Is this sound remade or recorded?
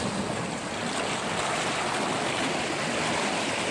recorded